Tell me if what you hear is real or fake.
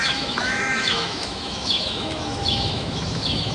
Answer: fake